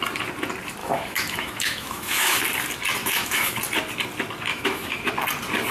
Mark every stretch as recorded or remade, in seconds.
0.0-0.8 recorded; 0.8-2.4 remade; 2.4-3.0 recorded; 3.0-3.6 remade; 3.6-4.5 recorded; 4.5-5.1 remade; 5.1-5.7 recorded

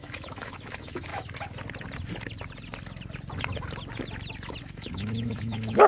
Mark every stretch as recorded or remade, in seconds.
0.0-1.1 remade; 1.1-4.6 recorded; 4.6-5.9 remade

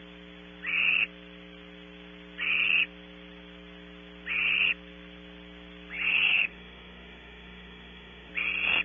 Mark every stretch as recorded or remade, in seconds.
0.0-6.3 recorded; 6.3-8.3 remade; 8.3-8.8 recorded

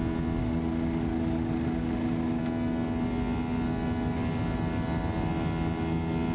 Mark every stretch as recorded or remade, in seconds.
0.0-0.4 recorded; 0.4-2.4 remade; 2.4-6.3 recorded

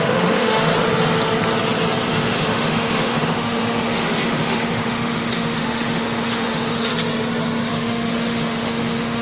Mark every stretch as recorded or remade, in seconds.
0.0-0.7 remade; 0.7-2.1 recorded; 2.1-6.9 remade; 6.9-7.7 recorded; 7.7-9.2 remade

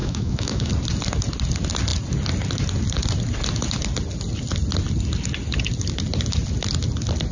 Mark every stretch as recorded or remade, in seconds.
0.0-0.7 remade; 0.7-7.3 recorded

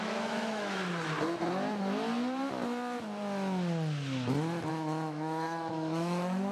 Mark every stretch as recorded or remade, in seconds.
0.0-0.8 remade; 0.8-4.7 recorded; 4.7-6.5 remade